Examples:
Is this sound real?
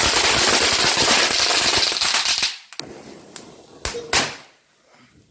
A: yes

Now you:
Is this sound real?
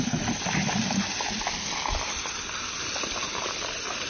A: yes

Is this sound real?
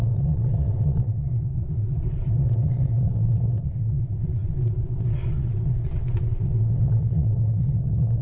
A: no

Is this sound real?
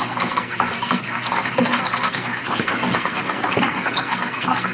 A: no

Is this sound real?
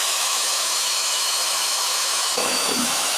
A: no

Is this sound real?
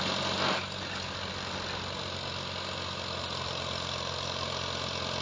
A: yes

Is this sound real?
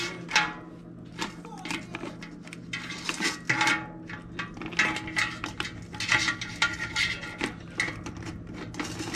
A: yes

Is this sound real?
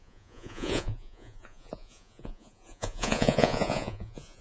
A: no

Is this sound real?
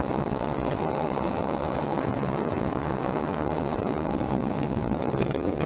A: no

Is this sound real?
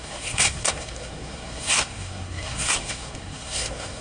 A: no